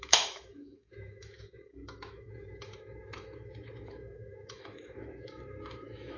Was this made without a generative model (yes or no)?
no